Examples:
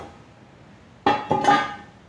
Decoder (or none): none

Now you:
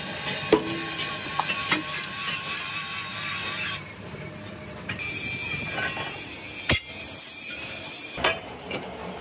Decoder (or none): vocoder, BigVGAN v2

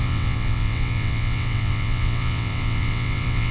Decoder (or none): vocoder, WaveNeXt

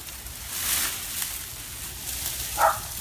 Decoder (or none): none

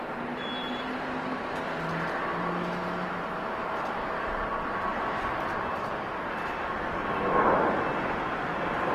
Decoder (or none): none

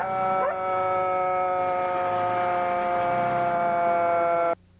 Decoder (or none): none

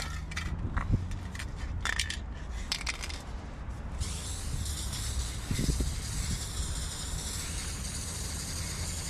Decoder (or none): none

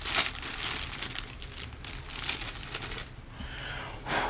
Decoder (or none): none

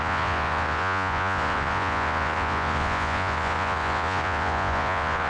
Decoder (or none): vocoder, Vocos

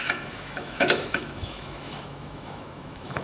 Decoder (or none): autoencoder, DAC-VAE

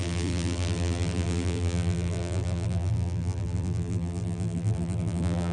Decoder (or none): vocoder, BigVGAN v2